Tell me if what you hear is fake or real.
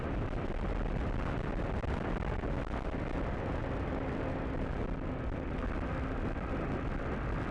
real